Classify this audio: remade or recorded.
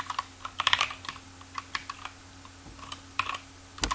recorded